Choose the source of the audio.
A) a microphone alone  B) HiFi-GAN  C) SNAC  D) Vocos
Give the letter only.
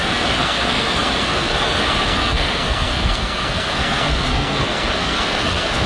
C